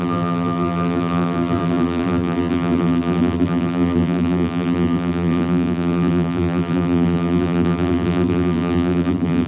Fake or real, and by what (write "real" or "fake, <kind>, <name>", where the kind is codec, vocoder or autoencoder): fake, vocoder, BigVGAN v2